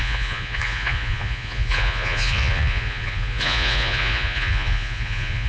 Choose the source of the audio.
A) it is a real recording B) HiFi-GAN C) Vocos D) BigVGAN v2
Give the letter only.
C